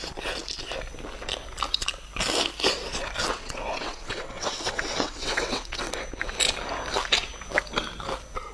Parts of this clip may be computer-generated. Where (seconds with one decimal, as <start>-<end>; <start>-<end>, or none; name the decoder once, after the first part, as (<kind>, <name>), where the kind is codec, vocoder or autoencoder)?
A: 3.3-5.9 (vocoder, WaveNeXt)